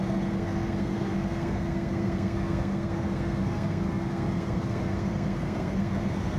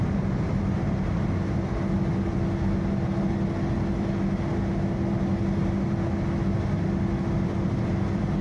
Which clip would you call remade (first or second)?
first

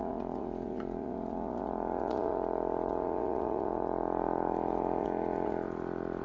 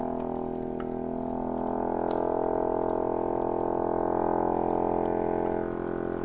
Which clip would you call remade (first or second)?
first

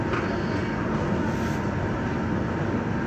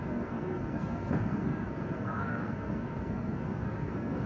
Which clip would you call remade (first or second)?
second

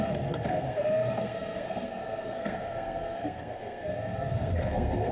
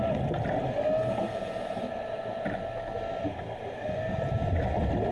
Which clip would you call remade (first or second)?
first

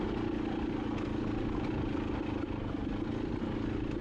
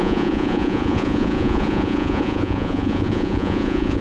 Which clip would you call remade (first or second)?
second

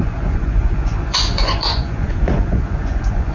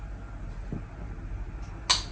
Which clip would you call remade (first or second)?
first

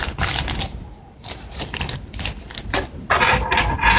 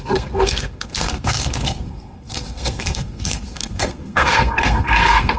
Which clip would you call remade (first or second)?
second